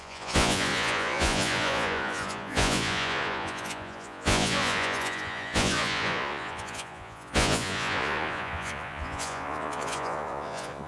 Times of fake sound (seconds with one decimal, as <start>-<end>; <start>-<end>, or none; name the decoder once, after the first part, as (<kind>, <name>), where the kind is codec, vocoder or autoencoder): 0.0-10.9 (vocoder, Vocos)